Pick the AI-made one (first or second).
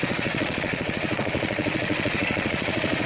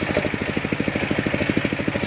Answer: first